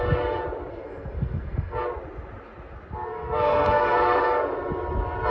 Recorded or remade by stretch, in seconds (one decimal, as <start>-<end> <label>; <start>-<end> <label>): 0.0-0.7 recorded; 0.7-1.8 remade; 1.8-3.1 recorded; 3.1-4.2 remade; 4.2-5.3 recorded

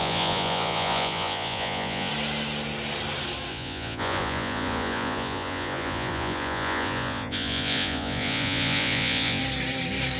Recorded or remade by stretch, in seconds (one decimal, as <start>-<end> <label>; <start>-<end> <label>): 0.0-2.1 remade; 2.1-3.5 recorded; 3.5-9.4 remade; 9.4-10.2 recorded

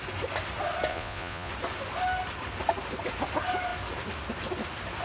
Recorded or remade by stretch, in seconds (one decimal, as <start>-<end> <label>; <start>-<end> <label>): 0.0-0.9 recorded; 0.9-1.5 remade; 1.5-5.0 recorded

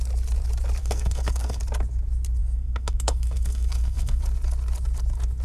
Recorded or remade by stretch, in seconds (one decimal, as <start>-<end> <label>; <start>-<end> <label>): 0.0-0.8 recorded; 0.8-1.6 remade; 1.6-2.4 recorded; 2.4-4.2 remade; 4.2-5.4 recorded